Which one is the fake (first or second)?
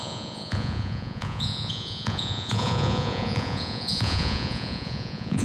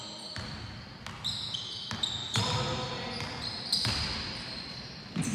first